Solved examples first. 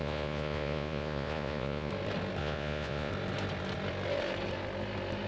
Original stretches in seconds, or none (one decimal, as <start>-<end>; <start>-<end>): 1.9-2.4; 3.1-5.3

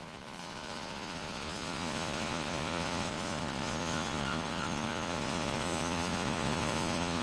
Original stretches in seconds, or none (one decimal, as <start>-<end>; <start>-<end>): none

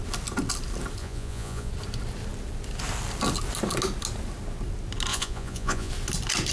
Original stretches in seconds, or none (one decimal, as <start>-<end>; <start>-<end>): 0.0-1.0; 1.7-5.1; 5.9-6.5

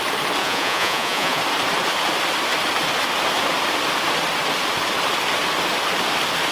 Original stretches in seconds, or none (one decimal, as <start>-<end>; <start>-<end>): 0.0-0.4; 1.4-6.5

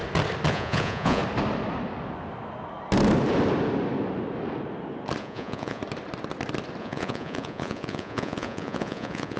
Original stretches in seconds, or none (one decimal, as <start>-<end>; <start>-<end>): 0.0-0.5; 1.2-5.2; 5.8-6.8

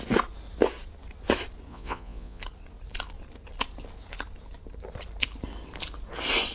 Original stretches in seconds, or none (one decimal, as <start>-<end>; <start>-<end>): 0.0-1.7; 2.4-6.5

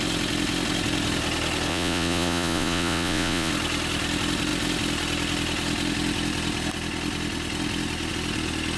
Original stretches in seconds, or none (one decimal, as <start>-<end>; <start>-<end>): 0.0-1.7; 3.5-8.8

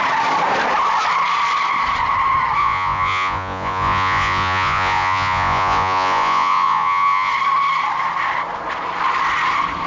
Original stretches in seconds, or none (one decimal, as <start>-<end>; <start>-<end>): 0.0-2.6; 7.3-9.9